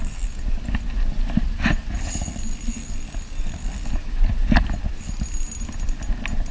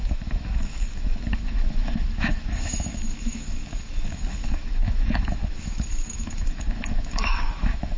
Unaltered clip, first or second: first